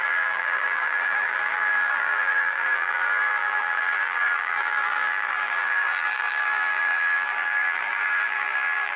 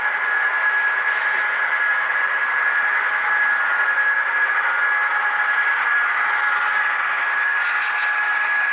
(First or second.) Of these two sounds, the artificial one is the first